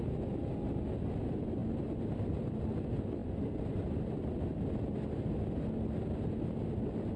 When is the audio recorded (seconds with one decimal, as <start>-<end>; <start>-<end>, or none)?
0.0-7.2